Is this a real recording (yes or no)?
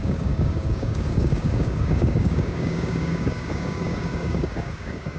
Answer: no